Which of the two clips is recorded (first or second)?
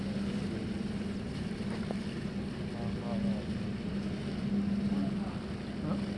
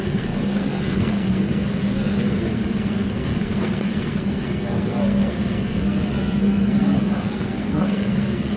first